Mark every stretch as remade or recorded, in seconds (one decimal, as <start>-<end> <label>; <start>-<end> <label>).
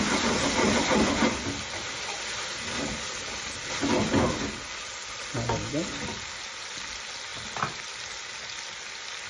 0.0-9.3 recorded